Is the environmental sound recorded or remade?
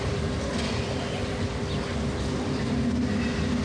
recorded